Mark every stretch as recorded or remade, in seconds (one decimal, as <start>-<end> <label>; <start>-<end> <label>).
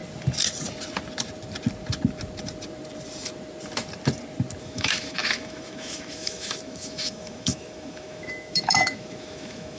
0.0-4.6 recorded; 4.6-9.8 remade